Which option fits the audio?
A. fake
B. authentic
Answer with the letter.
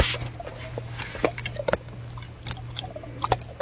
B